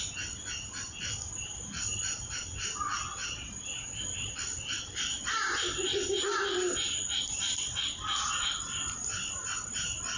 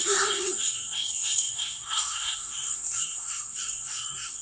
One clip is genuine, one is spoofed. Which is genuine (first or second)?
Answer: first